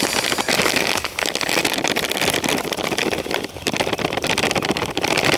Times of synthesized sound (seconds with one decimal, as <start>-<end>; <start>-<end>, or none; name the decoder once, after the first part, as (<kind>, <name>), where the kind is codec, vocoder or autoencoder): 1.6-4.8 (vocoder, BigVGAN v2)